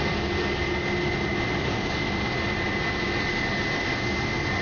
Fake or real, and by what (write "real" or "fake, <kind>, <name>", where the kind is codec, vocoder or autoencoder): real